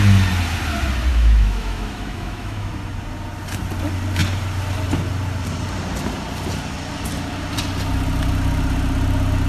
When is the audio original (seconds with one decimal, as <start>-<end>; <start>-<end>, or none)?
0.0-1.1; 2.7-9.5